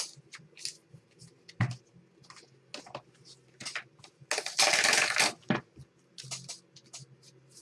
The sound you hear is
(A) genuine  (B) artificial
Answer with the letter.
A